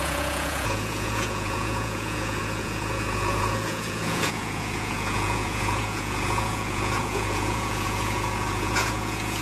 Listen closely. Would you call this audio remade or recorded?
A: remade